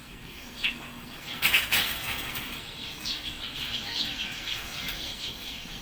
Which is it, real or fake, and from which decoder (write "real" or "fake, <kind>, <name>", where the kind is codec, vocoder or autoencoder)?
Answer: fake, codec, SNAC